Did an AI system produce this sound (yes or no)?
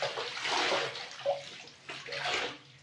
no